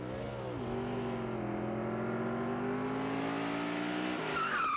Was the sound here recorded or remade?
recorded